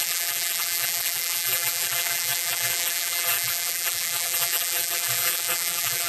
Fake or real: fake